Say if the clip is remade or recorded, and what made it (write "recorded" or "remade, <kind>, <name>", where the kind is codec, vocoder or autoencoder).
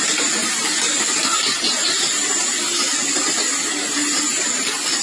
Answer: recorded